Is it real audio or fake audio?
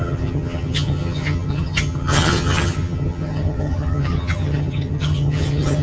fake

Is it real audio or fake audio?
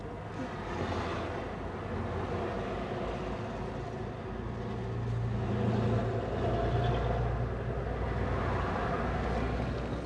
real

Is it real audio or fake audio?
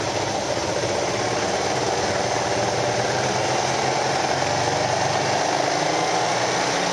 real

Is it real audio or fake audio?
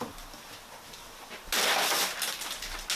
real